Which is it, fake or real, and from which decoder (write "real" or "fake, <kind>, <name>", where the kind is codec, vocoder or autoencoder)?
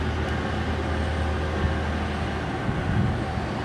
real